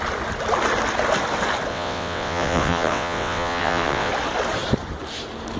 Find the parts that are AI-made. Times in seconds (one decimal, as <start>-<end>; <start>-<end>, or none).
1.7-4.1